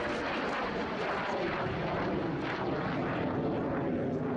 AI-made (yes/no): no